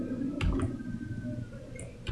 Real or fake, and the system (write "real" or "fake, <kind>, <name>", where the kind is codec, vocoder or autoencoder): real